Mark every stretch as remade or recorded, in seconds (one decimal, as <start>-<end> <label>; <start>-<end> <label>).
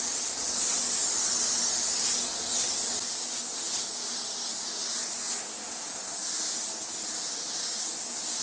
0.0-0.7 remade; 0.7-4.1 recorded; 4.1-4.8 remade; 4.8-7.0 recorded; 7.0-8.4 remade